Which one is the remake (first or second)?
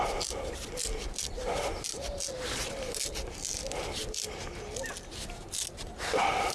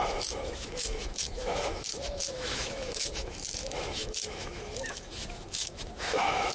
second